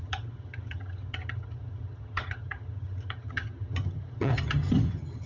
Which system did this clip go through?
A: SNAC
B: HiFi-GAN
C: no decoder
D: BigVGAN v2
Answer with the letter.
B